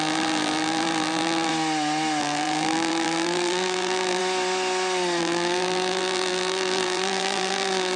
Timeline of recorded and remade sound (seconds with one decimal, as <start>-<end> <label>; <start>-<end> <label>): 0.0-1.5 remade; 1.5-2.2 recorded; 2.2-4.2 remade; 4.2-5.2 recorded; 5.2-8.0 remade